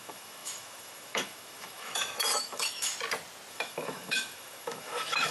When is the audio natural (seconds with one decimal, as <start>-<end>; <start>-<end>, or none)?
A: 2.9-3.5

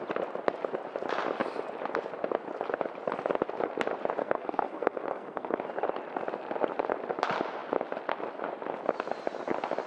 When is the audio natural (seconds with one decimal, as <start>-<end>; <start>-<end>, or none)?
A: 0.0-4.2; 5.6-9.9